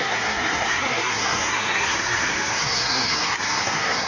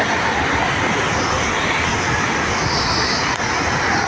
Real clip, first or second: second